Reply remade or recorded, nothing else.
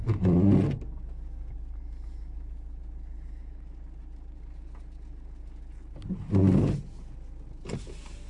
recorded